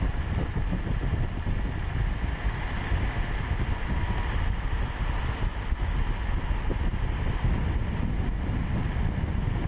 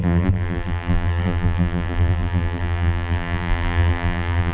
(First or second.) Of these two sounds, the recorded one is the first